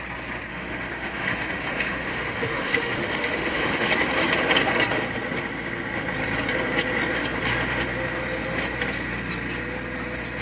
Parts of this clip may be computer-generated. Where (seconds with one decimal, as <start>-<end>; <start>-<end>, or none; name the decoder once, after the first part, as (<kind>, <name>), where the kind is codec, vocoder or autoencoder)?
0.5-3.9 (autoencoder, DAC-VAE)